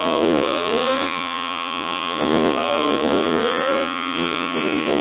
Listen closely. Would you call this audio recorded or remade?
remade